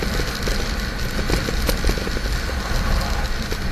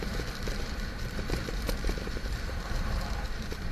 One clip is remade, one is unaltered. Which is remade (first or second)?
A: second